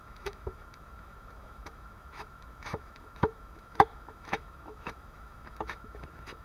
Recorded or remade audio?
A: remade